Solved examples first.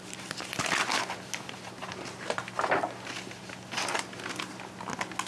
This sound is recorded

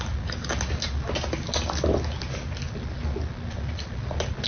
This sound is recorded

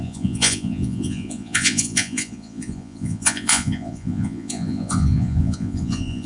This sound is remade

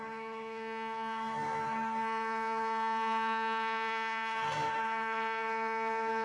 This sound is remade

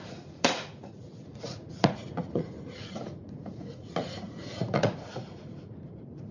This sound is remade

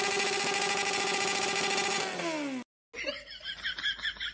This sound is recorded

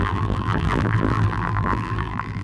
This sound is remade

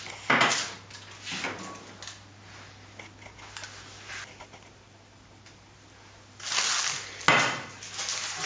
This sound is recorded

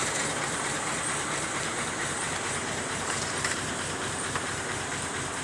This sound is remade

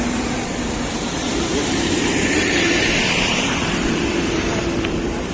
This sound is remade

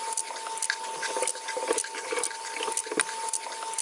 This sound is recorded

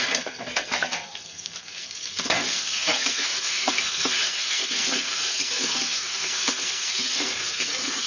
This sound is remade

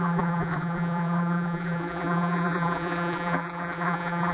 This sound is remade